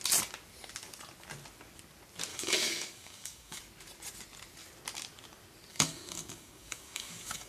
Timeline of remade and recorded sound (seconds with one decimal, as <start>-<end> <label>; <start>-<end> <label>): 0.0-2.3 recorded; 2.3-3.6 remade; 3.6-5.7 recorded; 5.7-7.5 remade

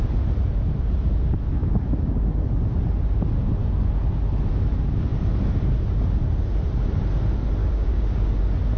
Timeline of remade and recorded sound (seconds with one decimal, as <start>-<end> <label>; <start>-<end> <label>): 0.0-7.6 recorded; 7.6-8.3 remade; 8.3-8.8 recorded

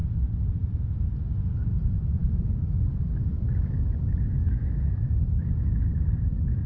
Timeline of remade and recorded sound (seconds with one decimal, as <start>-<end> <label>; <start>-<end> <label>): 0.0-2.2 recorded; 2.2-5.0 remade; 5.0-6.7 recorded